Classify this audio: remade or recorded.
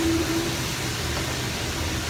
recorded